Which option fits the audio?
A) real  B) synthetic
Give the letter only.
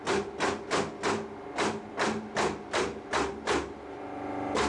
A